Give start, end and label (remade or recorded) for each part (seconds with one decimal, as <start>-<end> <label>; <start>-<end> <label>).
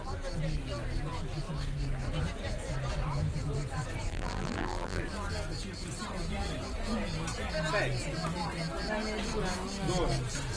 0.0-4.1 recorded; 4.1-5.0 remade; 5.0-10.6 recorded